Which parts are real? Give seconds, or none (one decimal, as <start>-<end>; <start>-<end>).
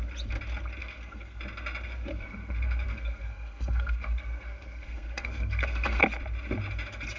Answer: 0.0-0.8; 1.4-2.1; 6.0-7.2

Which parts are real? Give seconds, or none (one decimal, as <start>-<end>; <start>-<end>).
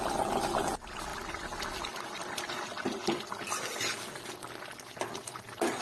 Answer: 0.0-5.8